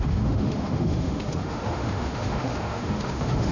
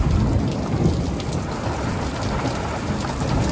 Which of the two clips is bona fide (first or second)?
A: second